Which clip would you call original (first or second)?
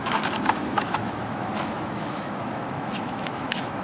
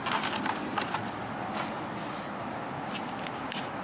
second